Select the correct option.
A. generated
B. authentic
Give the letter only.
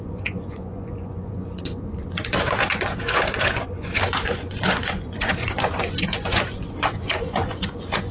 A